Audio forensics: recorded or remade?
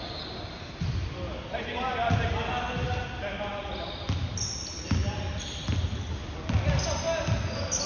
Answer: recorded